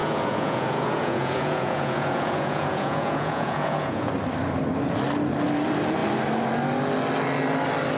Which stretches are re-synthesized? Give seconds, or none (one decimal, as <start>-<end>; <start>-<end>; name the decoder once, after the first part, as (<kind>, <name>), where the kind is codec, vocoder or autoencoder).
0.0-4.1 (vocoder, Vocos)